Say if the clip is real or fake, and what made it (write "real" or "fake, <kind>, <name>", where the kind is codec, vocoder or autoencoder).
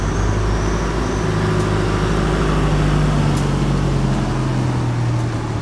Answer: real